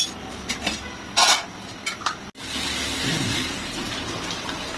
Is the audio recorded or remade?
recorded